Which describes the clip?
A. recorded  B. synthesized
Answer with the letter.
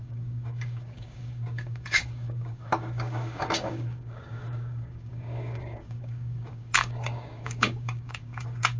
B